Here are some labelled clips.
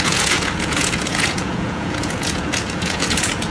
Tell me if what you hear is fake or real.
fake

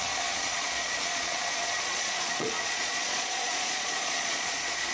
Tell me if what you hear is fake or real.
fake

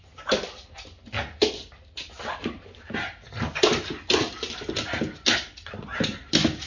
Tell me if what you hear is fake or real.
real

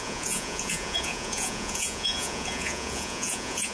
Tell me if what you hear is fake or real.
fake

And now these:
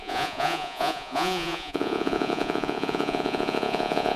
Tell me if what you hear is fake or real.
fake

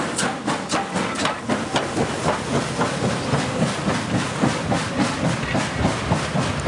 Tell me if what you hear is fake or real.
real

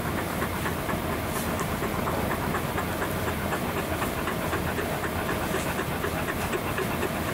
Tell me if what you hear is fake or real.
real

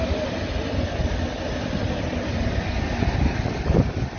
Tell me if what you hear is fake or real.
real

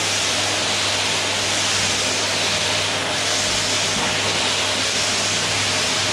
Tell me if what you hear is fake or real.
real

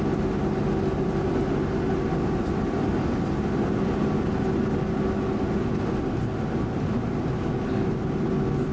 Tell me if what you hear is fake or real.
real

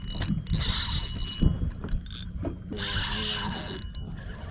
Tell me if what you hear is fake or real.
real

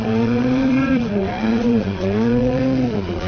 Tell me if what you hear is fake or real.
fake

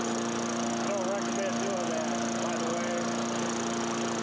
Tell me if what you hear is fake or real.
real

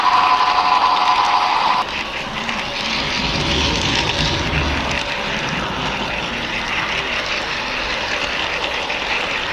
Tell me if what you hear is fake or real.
real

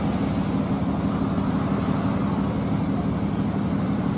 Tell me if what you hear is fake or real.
real